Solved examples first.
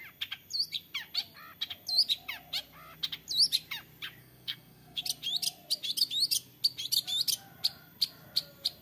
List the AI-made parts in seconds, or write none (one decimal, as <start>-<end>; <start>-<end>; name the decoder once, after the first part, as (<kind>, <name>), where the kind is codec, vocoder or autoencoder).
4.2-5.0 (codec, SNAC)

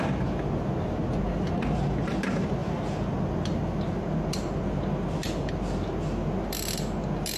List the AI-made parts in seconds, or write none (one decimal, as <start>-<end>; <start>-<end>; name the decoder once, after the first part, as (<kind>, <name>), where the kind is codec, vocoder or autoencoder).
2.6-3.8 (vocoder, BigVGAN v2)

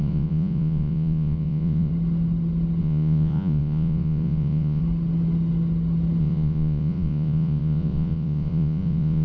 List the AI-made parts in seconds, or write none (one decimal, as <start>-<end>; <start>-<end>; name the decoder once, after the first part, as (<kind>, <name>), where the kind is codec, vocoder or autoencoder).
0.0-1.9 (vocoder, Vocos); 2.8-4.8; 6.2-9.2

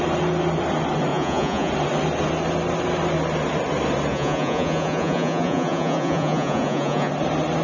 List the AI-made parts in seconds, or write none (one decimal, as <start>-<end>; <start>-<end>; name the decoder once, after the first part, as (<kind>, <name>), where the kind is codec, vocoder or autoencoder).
1.1-1.7 (vocoder, Vocos); 4.1-7.1

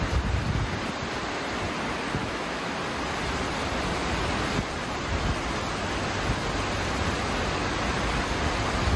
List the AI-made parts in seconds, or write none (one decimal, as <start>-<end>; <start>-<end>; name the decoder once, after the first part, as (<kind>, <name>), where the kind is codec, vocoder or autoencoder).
2.2-2.7 (autoencoder, DAC-VAE)

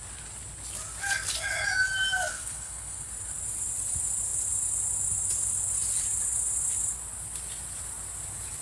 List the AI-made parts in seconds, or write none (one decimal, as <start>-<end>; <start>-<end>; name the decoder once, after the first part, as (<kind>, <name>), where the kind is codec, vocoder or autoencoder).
2.3-3.1 (codec, SNAC)

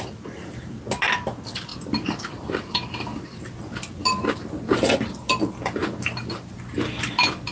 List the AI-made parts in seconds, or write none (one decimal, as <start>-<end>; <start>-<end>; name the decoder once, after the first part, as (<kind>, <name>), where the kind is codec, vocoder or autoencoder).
none

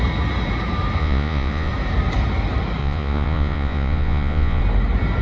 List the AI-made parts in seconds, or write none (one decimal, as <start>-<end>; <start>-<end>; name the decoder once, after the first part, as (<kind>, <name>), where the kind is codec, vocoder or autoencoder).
1.0-1.7 (vocoder, Vocos); 2.8-4.6